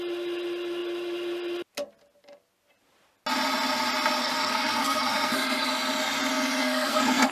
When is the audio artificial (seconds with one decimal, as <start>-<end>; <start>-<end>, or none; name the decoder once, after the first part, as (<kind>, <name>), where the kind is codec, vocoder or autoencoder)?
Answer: 4.2-5.7 (codec, SNAC); 6.6-7.3